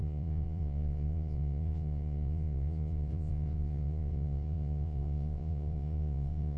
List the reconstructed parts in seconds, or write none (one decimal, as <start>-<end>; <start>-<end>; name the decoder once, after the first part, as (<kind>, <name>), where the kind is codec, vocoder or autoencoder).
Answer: 0.0-6.6 (vocoder, Vocos)

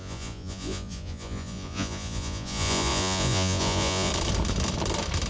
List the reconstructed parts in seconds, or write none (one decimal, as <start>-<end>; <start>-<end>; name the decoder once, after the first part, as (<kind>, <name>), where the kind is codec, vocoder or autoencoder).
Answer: 0.0-4.1 (vocoder, Vocos)

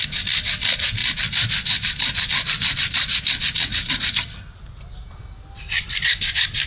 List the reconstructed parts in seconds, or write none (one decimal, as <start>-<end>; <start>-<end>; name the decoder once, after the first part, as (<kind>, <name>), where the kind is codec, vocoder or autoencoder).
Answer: none

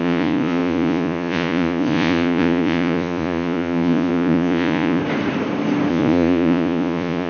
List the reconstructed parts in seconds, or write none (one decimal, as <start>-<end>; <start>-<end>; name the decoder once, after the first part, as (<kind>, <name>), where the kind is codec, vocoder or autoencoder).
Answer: 0.0-5.0 (vocoder, Vocos); 5.9-7.3

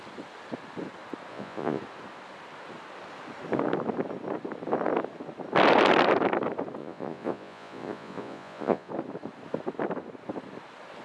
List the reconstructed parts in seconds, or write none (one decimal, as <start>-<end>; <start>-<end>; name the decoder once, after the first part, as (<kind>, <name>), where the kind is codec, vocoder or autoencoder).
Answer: 1.3-1.8 (vocoder, Vocos); 6.8-8.9

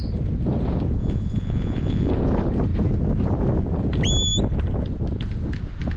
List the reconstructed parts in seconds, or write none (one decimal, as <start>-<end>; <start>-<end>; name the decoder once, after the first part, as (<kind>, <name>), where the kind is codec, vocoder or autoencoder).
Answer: 1.0-2.1 (vocoder, Vocos)